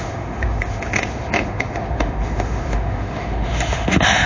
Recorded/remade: remade